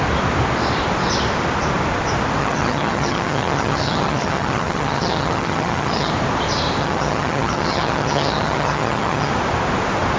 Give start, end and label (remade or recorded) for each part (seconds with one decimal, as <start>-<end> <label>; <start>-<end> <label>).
0.0-2.4 recorded; 2.4-6.1 remade; 6.1-6.8 recorded; 6.8-9.3 remade; 9.3-10.2 recorded